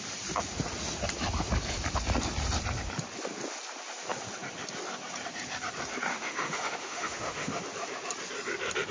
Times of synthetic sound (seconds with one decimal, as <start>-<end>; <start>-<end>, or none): 6.1-7.6